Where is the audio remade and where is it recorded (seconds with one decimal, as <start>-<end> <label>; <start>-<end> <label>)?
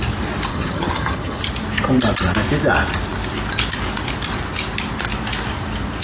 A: 0.0-0.5 recorded; 0.5-1.4 remade; 1.4-6.0 recorded